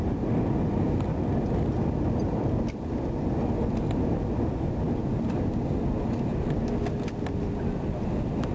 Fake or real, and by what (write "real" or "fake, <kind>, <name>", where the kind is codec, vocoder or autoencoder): real